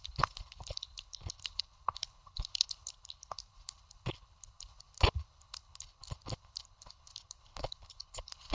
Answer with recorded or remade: remade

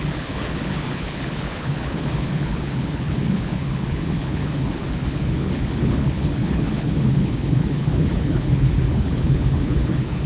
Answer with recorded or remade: remade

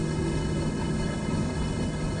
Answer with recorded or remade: remade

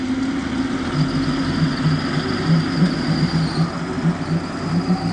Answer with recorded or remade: recorded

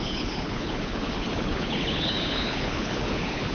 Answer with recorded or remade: remade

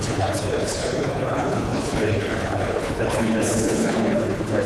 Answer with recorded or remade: remade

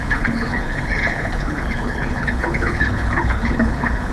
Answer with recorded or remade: remade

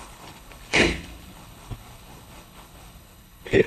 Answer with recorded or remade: remade